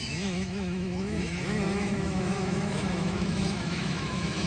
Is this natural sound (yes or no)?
no